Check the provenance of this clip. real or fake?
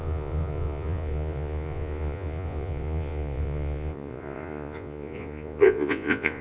fake